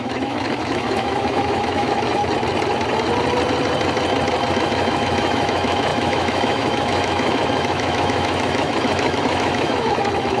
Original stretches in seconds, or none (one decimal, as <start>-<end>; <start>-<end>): 2.2-4.5